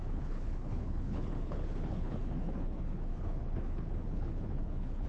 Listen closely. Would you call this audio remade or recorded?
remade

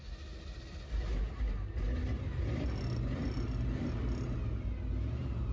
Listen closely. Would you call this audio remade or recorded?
recorded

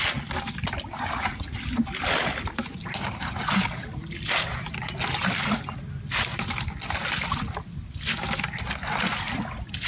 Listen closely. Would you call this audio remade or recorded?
recorded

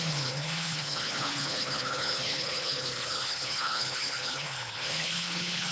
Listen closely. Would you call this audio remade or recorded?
remade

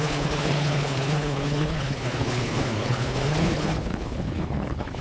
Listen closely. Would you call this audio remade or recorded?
remade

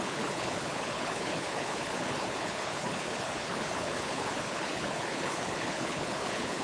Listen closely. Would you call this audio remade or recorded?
remade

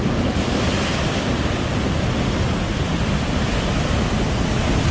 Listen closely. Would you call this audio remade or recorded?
recorded